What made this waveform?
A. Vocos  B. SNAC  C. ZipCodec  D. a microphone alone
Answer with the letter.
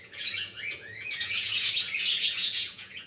A